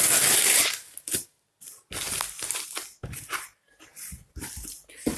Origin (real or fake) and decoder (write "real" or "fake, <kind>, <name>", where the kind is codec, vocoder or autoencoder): real